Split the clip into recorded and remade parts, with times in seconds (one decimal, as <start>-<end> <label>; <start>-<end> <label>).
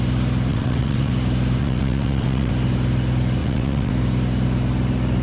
0.0-0.5 recorded; 0.5-1.1 remade; 1.1-1.6 recorded; 1.6-2.5 remade; 2.5-3.4 recorded; 3.4-3.9 remade; 3.9-5.2 recorded